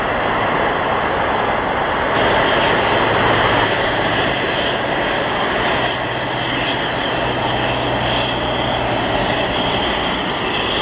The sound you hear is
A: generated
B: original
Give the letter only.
B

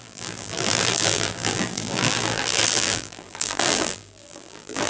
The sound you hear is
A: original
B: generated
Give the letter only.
B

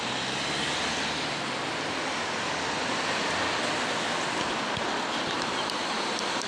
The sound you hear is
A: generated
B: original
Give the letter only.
B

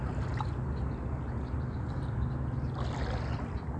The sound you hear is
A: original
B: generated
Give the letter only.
A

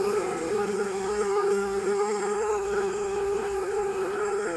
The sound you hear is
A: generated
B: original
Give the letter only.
A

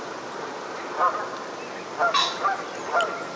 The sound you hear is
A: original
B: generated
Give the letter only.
A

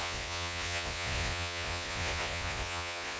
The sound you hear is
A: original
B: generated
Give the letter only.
B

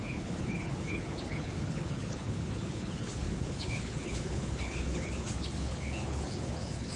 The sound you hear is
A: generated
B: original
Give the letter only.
A